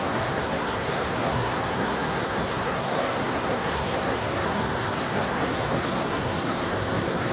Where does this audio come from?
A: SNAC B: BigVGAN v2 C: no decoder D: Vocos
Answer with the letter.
A